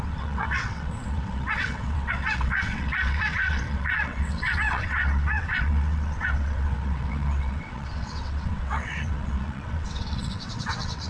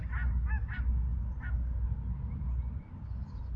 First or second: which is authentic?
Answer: second